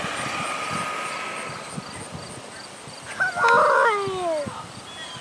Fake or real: real